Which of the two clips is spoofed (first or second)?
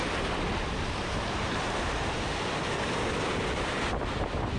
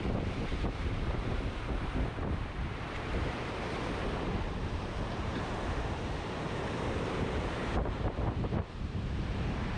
second